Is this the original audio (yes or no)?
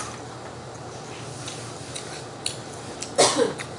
yes